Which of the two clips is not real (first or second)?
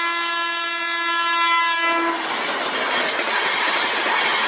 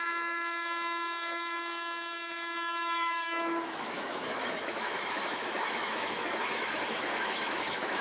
second